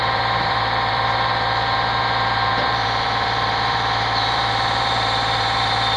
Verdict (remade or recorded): remade